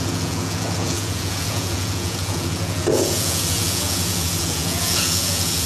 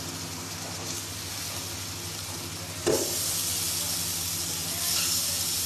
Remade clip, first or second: first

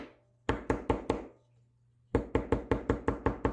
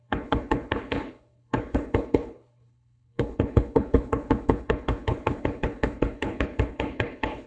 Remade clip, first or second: second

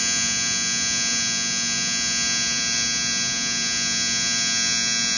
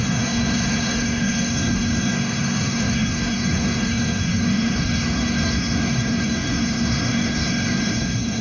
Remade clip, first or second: second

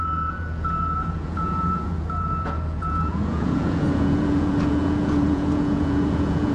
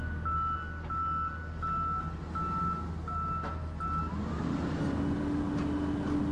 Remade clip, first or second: first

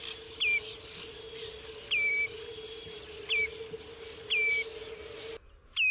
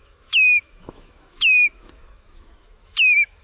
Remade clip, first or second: second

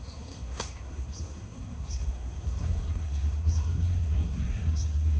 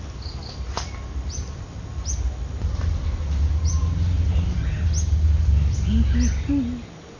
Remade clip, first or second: first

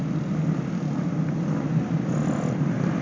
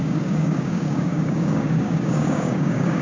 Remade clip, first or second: second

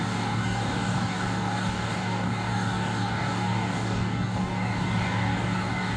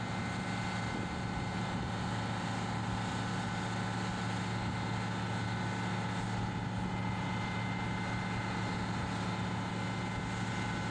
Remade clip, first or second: first